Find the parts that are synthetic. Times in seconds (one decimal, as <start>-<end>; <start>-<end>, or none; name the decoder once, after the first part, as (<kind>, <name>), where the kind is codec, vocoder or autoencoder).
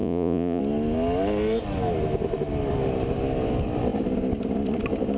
0.0-0.6 (vocoder, Vocos)